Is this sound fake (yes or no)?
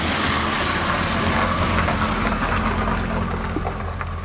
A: no